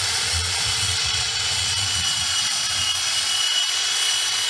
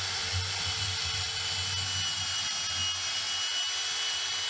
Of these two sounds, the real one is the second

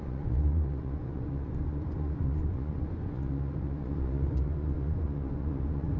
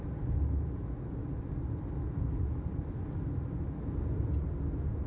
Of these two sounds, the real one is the second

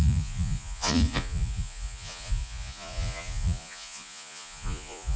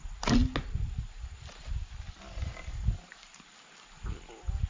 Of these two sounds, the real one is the second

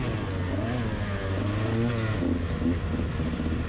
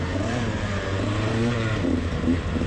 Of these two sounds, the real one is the first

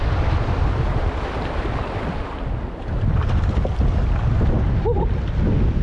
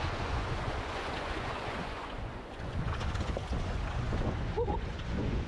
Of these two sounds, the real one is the first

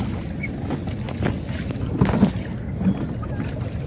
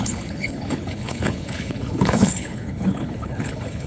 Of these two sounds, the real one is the first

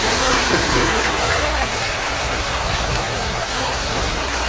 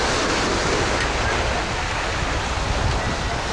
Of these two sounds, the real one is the second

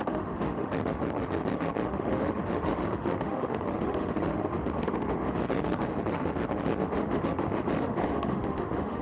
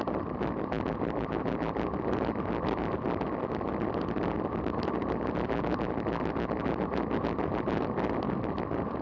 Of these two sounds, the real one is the second